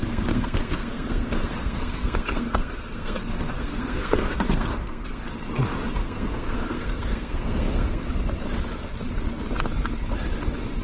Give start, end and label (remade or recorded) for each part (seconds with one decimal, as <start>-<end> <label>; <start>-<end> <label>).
0.0-5.2 remade; 5.2-6.0 recorded; 6.0-8.1 remade; 8.1-10.8 recorded